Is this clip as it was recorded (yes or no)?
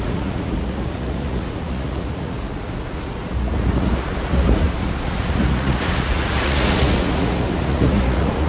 no